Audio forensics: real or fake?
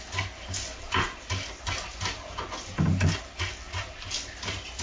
real